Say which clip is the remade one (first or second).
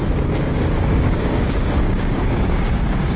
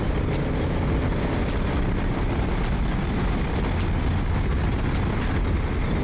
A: first